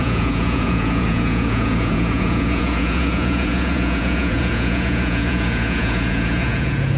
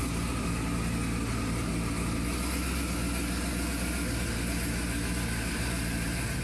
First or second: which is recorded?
second